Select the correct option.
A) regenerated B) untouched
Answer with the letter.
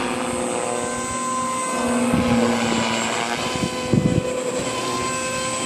B